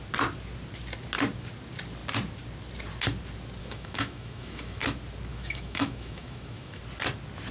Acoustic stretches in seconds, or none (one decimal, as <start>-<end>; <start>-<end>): 0.0-3.6; 4.8-5.3; 6.8-7.5